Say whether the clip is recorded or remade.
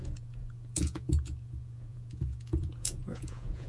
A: remade